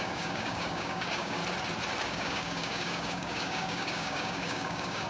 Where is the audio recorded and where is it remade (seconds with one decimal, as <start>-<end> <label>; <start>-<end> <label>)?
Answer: 0.0-1.4 remade; 1.4-2.0 recorded; 2.0-5.1 remade